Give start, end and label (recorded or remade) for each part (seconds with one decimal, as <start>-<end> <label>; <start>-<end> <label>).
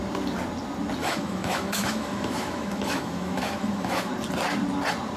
0.0-1.0 recorded; 1.0-4.1 remade; 4.1-5.2 recorded